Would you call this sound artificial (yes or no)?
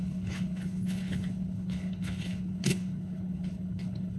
yes